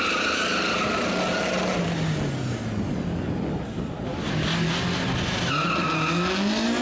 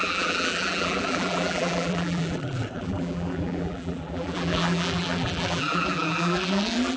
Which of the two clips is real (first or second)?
first